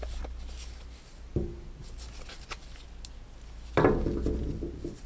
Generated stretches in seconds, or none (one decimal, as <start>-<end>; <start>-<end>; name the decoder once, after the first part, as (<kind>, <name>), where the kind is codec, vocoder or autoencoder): none